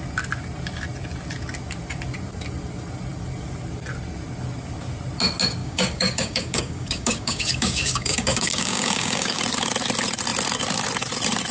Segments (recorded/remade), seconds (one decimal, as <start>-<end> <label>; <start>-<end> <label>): 0.0-5.6 recorded; 5.6-9.4 remade; 9.4-11.5 recorded